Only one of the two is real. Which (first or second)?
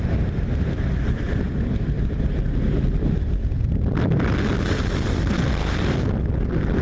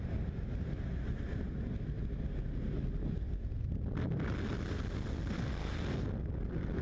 second